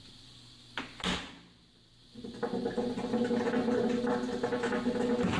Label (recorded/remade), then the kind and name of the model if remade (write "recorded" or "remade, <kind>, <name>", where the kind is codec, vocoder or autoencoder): recorded